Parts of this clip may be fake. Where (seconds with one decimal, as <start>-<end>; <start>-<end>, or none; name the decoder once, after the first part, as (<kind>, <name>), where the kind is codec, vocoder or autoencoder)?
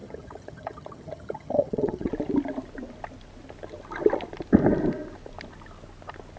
0.0-2.1 (vocoder, HiFi-GAN)